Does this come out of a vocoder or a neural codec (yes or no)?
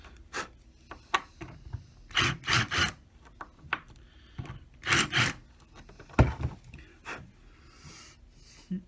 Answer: no